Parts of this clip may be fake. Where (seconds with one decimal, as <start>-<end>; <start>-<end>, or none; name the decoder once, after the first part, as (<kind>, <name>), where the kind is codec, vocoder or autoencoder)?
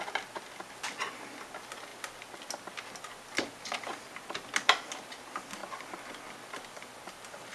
none